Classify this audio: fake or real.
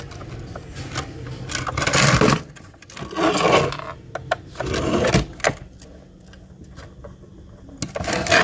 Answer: real